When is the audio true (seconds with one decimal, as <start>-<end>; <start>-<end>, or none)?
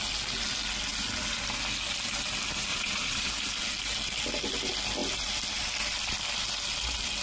0.0-2.7; 3.3-7.2